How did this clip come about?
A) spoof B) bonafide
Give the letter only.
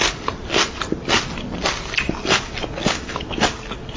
B